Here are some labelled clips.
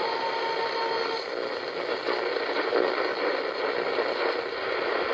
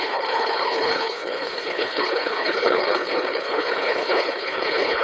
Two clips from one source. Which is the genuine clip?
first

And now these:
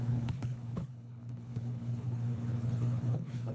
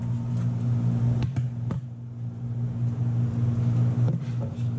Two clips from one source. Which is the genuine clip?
second